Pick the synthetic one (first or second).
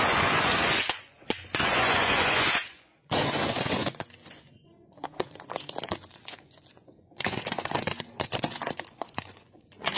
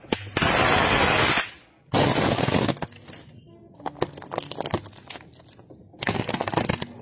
first